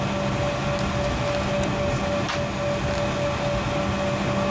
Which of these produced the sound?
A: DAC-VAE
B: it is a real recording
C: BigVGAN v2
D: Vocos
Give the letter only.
B